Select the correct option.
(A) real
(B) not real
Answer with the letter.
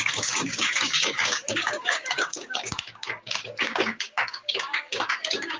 B